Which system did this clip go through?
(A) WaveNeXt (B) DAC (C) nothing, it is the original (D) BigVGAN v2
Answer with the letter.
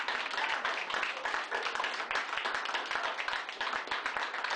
D